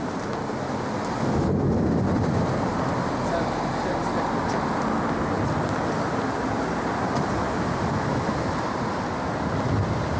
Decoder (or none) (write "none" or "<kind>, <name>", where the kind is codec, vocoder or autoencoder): none